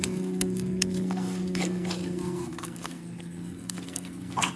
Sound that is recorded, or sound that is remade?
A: remade